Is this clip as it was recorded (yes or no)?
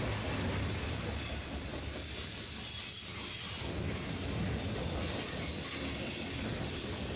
yes